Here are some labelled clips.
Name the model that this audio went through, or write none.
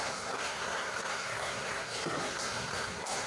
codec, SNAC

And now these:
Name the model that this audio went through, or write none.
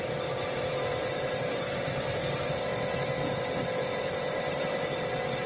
vocoder, BigVGAN v2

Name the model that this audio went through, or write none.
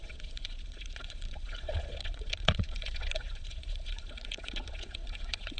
vocoder, Vocos